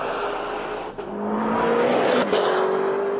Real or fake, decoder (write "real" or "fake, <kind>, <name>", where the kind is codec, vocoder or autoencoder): real